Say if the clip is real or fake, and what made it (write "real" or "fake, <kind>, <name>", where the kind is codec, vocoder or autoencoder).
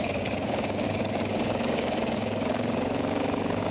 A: fake, codec, DAC